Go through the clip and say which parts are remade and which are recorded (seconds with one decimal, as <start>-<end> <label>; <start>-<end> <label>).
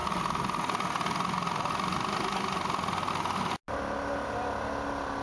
0.0-5.2 recorded